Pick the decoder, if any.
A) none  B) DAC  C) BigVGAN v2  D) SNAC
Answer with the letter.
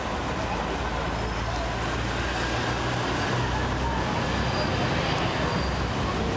A